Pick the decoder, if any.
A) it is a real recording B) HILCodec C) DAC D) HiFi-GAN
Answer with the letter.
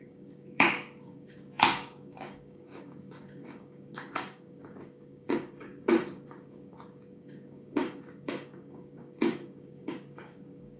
C